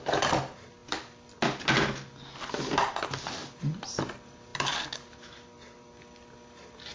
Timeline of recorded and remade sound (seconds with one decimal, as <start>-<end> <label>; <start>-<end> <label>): 0.0-6.9 recorded